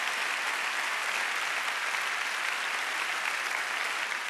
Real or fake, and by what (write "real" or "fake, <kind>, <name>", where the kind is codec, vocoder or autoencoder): real